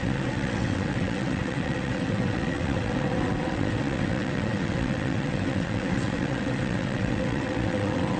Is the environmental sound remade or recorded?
remade